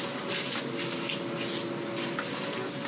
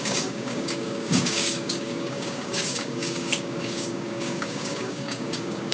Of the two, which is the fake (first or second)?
second